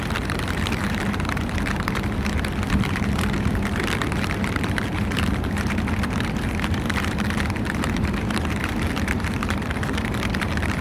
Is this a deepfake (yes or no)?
yes